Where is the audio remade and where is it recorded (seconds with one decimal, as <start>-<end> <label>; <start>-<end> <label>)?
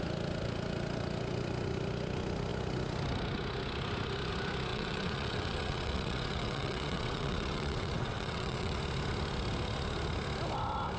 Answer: 0.0-4.7 recorded; 4.7-8.8 remade; 8.8-11.0 recorded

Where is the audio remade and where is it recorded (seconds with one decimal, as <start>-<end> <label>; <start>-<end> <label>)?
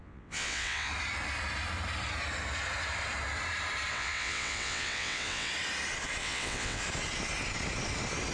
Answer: 0.0-0.9 remade; 0.9-3.9 recorded; 3.9-5.5 remade; 5.5-6.2 recorded; 6.2-6.8 remade; 6.8-8.3 recorded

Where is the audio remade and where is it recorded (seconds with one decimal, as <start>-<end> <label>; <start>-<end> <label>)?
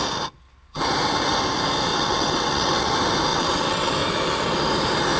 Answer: 0.0-1.9 recorded; 1.9-2.9 remade; 2.9-3.3 recorded; 3.3-3.9 remade; 3.9-5.2 recorded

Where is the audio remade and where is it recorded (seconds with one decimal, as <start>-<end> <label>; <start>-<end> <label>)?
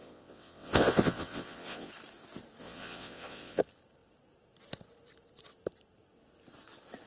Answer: 0.0-1.9 remade; 1.9-2.6 recorded; 2.6-3.6 remade; 3.6-7.1 recorded